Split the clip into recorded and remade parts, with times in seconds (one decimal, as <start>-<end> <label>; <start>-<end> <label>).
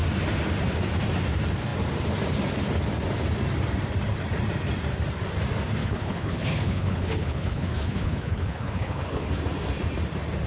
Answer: 0.0-5.8 recorded; 5.8-9.3 remade; 9.3-10.5 recorded